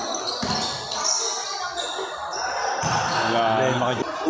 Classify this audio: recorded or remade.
recorded